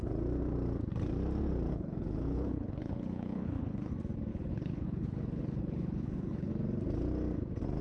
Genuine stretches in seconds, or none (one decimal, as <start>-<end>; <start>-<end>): 0.0-1.7; 3.9-4.3; 6.5-7.8